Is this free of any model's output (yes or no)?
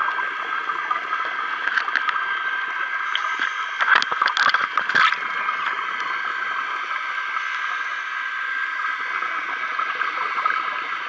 yes